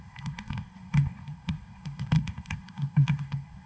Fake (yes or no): yes